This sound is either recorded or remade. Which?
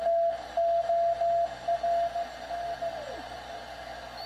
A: recorded